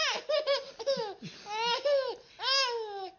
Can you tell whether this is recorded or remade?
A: recorded